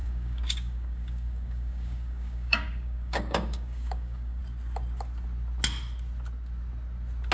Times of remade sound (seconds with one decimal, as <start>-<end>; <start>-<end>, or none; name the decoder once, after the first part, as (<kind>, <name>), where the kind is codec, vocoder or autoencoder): 0.0-4.4 (codec, DAC)

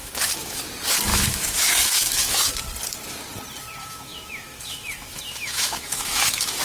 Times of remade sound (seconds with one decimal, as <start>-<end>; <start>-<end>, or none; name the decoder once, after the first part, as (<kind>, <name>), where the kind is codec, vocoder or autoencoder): 0.0-0.6 (autoencoder, DAC-VAE); 1.1-2.5; 3.8-6.6

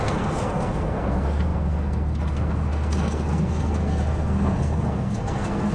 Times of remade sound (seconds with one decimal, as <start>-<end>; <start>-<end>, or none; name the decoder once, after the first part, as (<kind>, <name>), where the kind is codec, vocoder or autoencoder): 0.0-5.7 (codec, SNAC)

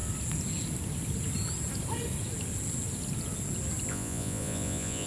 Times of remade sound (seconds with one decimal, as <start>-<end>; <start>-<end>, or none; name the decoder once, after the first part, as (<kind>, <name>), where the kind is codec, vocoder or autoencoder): 3.9-5.1 (vocoder, Vocos)

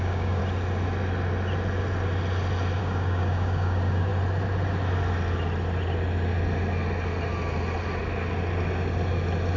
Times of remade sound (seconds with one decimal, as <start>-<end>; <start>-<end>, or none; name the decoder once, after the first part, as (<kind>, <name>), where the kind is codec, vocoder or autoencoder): 0.0-0.4 (codec, DAC); 2.8-4.1

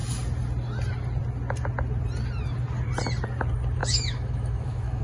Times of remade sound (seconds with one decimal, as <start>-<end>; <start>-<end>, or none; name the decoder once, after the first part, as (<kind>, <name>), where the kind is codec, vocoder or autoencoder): 3.8-5.0 (autoencoder, DAC-VAE)